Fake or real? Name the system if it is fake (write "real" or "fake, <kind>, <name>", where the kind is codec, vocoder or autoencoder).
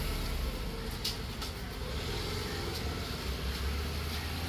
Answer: real